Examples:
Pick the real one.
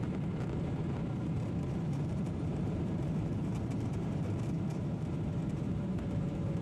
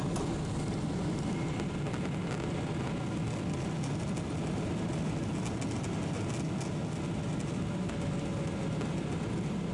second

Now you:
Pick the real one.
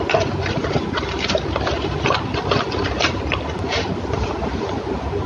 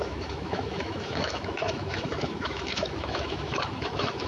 first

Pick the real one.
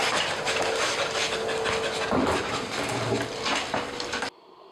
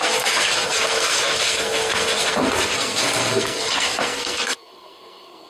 first